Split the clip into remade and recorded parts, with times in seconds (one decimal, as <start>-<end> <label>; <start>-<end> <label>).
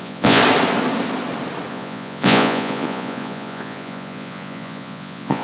0.0-0.4 remade; 0.4-1.7 recorded; 1.7-5.4 remade